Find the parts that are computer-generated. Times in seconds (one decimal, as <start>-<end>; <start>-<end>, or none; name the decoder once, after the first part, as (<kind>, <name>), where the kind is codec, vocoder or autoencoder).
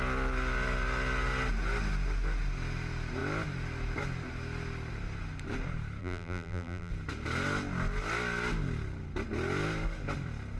6.0-6.9 (vocoder, BigVGAN v2)